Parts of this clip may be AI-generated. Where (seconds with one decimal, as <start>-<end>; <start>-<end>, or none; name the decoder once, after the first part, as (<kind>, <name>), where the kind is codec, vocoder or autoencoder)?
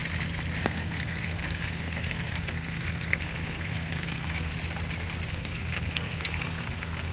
0.6-4.5 (codec, SNAC); 5.3-7.1